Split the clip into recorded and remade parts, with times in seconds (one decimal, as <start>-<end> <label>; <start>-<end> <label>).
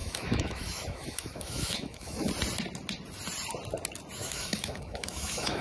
0.0-2.3 remade; 2.3-4.2 recorded; 4.2-5.6 remade